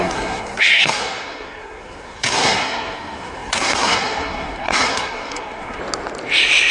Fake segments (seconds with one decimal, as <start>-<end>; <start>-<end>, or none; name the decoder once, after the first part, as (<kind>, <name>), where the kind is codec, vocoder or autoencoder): 0.0-5.8 (codec, SNAC)